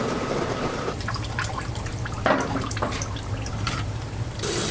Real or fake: fake